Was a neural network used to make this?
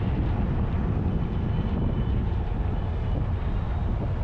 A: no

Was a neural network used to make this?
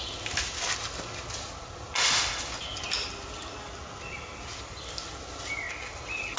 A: no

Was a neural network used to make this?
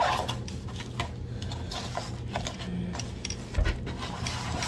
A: no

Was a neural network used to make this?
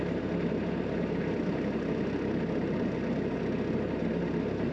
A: no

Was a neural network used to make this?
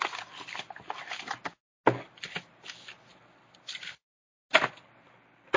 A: no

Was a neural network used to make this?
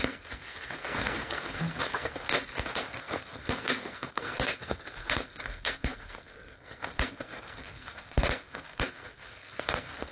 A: yes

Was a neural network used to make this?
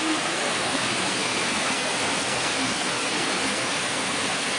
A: yes